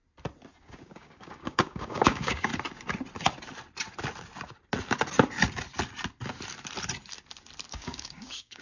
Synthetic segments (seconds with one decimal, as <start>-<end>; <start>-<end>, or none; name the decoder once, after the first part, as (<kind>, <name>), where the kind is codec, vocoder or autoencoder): 0.6-2.5 (codec, DAC); 7.7-8.6